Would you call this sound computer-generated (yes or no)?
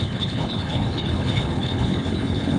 yes